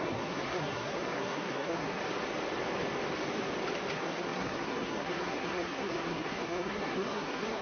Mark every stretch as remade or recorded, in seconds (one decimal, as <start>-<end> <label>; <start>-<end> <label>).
0.0-2.0 remade; 2.0-3.9 recorded; 3.9-7.6 remade